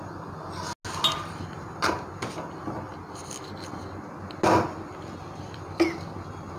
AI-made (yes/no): no